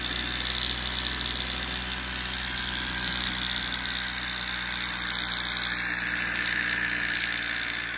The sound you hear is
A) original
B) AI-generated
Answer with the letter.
A